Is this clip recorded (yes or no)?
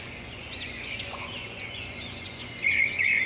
no